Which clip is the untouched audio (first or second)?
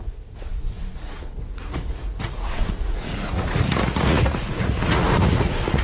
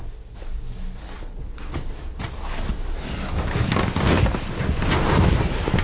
second